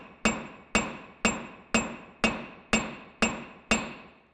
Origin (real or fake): real